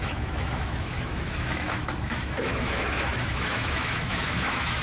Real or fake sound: fake